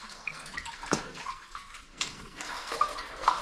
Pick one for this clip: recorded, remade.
remade